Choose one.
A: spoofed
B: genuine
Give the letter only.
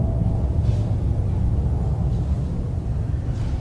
B